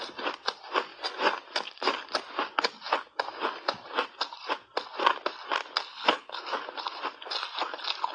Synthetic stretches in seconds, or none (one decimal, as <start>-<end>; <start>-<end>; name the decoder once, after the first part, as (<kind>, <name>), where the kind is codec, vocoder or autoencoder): 5.9-6.4 (codec, HILCodec)